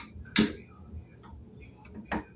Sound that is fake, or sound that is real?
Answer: real